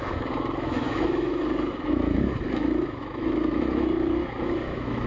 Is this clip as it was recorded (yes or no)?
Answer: no